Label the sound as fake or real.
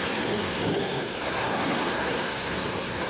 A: fake